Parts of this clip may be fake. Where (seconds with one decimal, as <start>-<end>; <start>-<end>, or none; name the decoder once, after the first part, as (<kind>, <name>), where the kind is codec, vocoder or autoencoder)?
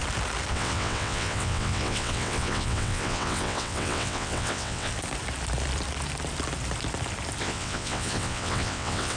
0.5-4.9 (vocoder, WaveNeXt); 7.4-9.2